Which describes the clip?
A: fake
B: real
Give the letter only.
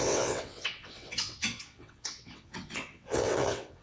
A